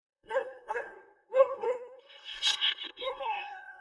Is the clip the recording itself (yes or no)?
no